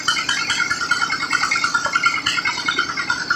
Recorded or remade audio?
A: recorded